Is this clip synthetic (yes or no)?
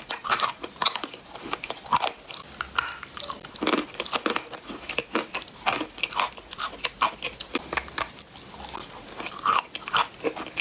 no